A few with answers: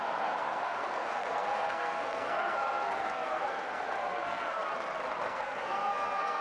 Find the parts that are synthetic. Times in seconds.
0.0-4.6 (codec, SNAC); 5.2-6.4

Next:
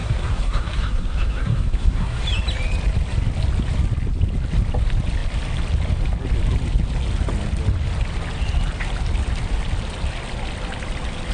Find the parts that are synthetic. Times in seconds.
0.0-2.2 (codec, SNAC)

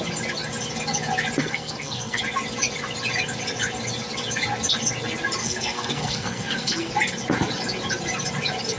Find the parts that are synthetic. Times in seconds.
1.4-2.2 (codec, SNAC); 5.4-6.9

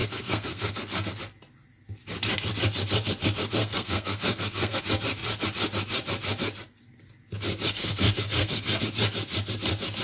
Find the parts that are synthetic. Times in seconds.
0.0-1.1 (codec, SNAC); 3.6-4.8; 7.8-8.8

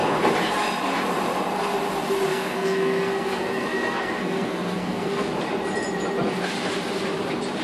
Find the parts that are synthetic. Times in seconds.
2.3-5.3 (codec, SNAC)